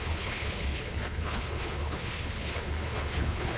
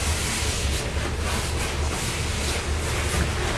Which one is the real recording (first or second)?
second